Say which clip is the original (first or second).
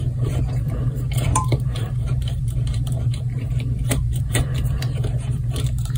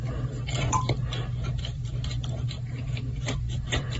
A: second